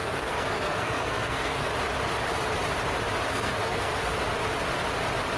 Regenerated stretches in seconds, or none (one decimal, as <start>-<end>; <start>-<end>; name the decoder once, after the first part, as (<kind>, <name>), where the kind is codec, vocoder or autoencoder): 0.0-1.7 (codec, SNAC); 3.3-3.9